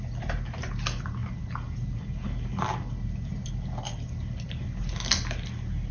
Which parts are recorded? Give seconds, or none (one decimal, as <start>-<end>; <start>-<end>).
0.0-5.9

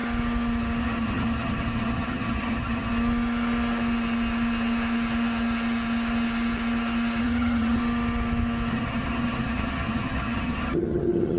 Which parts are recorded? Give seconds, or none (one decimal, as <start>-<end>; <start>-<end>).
0.0-0.8; 2.9-7.2; 7.8-8.7